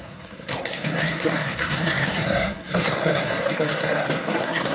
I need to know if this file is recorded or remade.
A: remade